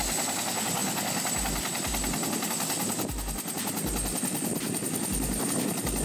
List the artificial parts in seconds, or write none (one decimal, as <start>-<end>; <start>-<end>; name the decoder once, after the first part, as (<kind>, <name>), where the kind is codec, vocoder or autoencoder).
4.5-5.4 (vocoder, BigVGAN v2)